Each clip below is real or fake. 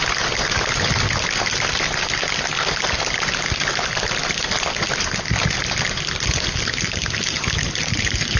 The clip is real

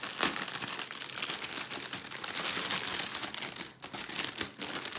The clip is real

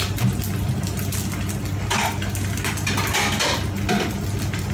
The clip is real